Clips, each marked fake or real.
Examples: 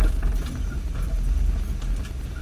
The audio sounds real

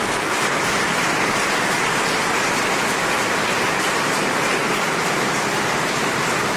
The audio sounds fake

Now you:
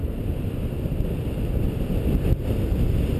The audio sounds real